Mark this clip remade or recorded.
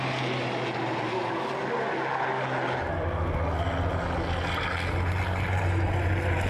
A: recorded